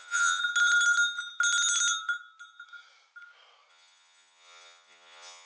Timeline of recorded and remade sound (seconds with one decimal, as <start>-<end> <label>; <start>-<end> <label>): 0.0-0.4 remade; 0.4-3.7 recorded; 3.7-5.5 remade